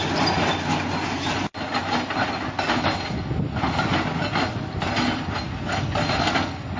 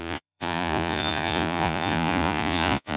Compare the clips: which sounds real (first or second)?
first